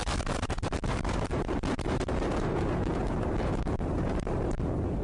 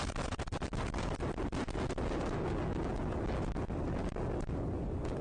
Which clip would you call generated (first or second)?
first